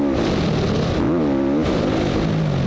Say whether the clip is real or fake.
real